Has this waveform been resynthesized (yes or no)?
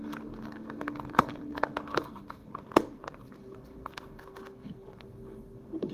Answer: yes